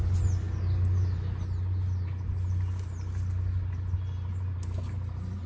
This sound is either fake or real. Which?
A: real